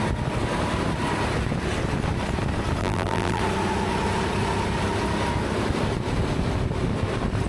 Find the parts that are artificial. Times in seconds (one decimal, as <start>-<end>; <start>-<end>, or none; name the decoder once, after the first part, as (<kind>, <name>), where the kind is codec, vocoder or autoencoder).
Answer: 2.8-3.4 (vocoder, BigVGAN v2)